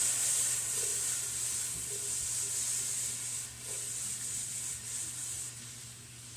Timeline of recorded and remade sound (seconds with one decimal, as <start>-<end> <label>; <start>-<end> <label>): 0.0-6.4 recorded